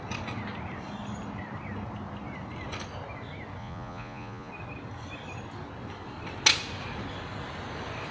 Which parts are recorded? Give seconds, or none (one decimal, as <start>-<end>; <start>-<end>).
0.0-3.6; 4.5-8.1

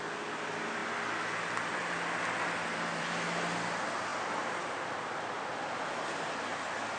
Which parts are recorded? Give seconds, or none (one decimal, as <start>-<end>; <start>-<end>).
0.0-7.0

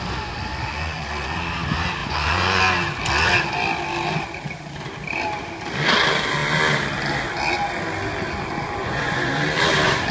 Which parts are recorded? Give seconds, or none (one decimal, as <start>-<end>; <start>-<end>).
0.0-0.7; 1.5-2.0; 2.6-8.8; 9.3-10.1

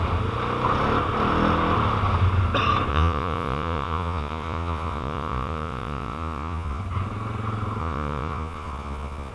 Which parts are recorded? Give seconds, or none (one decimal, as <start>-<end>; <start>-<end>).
0.0-2.9; 6.8-7.8

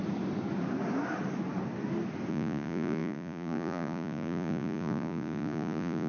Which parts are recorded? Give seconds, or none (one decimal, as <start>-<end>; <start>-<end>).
0.0-2.3

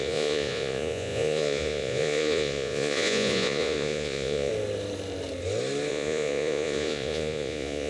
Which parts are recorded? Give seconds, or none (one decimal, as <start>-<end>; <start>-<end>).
4.5-5.9